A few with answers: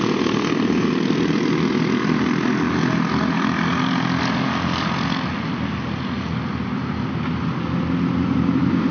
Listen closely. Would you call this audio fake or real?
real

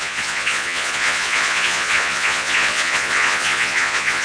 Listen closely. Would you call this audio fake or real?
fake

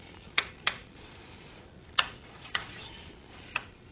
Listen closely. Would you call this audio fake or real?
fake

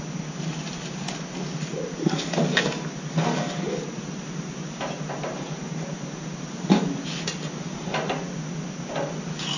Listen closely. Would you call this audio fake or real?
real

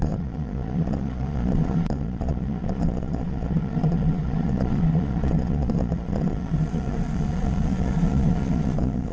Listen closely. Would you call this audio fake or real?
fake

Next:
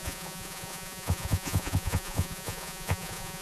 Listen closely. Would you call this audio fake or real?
fake